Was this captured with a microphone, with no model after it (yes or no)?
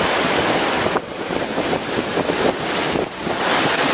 yes